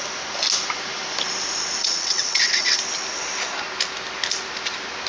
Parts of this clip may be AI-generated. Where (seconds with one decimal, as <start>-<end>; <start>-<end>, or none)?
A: 1.8-2.8

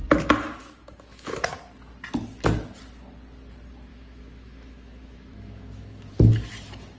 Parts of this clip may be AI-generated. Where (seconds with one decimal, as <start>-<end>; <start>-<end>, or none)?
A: 0.6-1.5; 3.9-6.1

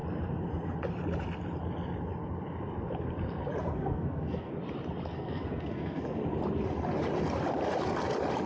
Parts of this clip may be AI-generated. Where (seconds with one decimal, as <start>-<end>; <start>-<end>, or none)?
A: 3.6-4.5; 5.1-6.2

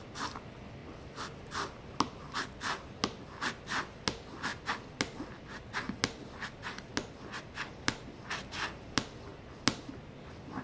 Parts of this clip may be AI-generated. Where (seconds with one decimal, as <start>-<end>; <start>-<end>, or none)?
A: none

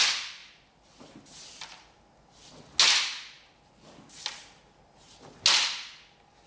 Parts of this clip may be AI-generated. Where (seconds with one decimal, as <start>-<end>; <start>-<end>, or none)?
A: none

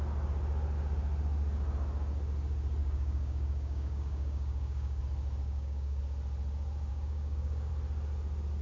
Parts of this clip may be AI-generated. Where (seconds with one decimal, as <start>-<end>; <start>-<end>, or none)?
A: 2.8-5.0; 5.4-6.0; 6.9-7.7

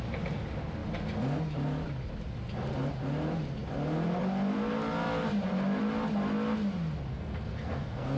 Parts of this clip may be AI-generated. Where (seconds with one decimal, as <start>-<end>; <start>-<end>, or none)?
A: 7.1-8.2